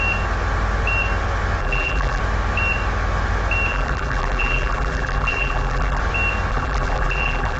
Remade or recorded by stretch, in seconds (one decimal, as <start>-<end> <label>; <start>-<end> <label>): 0.0-1.6 recorded; 1.6-2.2 remade; 2.2-3.7 recorded; 3.7-6.0 remade; 6.0-6.5 recorded; 6.5-7.6 remade